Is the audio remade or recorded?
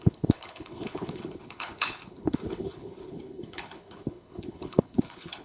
remade